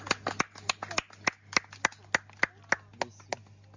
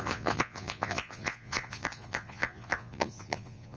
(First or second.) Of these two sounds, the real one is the first